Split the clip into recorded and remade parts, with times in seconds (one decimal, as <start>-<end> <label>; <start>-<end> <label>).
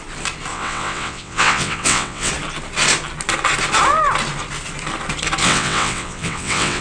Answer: 0.0-0.5 recorded; 0.5-2.3 remade; 2.3-5.4 recorded; 5.4-6.8 remade